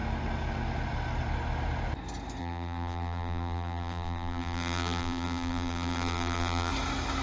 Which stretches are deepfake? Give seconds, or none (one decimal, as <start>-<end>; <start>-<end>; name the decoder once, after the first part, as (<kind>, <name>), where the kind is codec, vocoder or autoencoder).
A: 2.4-6.7 (vocoder, BigVGAN v2)